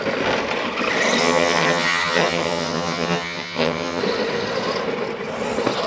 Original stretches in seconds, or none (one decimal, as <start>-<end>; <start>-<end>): 0.0-1.2; 4.0-5.9

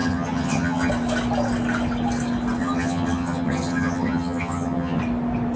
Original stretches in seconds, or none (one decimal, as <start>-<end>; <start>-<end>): 0.9-2.6; 5.0-5.6

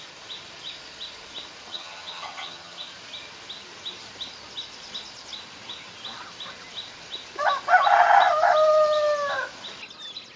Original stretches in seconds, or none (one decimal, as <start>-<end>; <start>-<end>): 0.0-1.7; 2.9-10.4

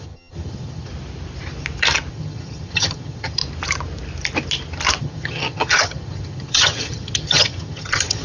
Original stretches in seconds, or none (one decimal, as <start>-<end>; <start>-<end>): 0.9-2.1; 3.4-5.0

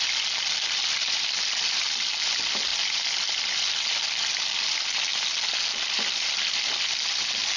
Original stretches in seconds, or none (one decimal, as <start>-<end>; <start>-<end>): 0.0-7.6

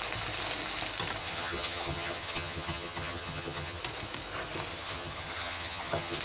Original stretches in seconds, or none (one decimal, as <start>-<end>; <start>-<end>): 0.0-1.2; 3.8-4.7

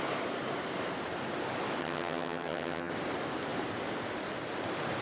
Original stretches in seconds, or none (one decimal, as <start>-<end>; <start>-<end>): 0.0-1.8; 2.9-5.0